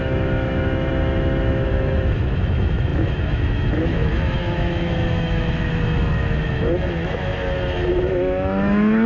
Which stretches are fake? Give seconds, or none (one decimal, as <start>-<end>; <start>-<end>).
0.0-7.3; 7.9-9.1